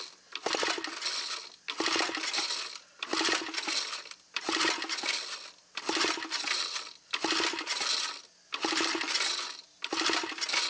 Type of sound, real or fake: real